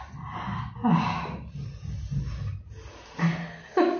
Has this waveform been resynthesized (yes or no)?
no